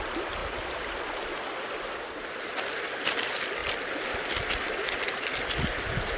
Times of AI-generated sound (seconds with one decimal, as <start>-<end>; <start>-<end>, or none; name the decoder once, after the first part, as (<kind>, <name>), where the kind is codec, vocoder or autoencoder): none